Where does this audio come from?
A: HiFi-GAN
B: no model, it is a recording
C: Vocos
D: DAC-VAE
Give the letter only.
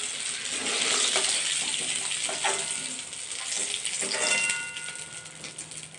B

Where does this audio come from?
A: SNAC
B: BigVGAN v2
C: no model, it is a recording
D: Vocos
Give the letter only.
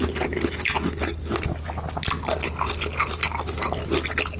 C